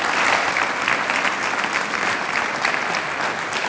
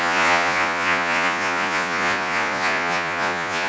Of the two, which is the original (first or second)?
first